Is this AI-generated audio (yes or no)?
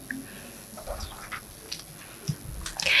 no